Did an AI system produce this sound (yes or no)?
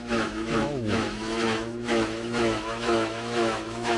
yes